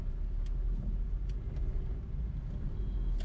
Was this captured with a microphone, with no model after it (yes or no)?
yes